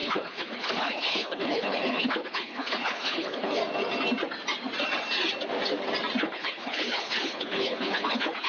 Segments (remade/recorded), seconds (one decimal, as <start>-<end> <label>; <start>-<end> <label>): 0.0-3.6 remade; 3.6-6.2 recorded; 6.2-8.5 remade